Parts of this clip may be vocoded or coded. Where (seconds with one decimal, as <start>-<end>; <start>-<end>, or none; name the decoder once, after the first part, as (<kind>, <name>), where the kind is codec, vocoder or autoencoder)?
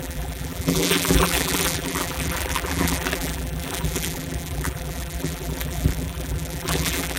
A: 0.0-7.2 (vocoder, BigVGAN v2)